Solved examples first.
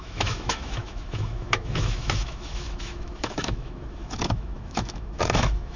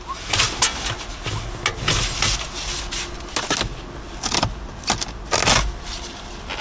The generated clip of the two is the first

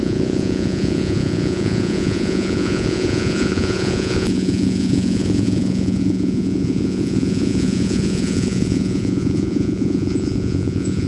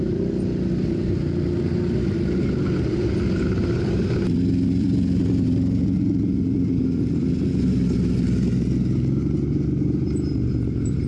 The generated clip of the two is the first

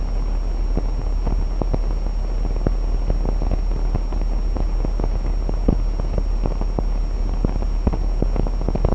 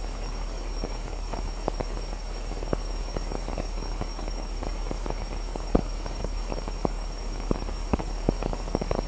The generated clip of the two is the second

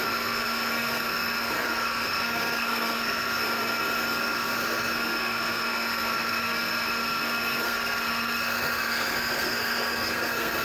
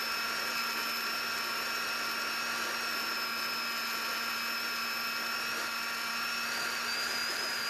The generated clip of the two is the first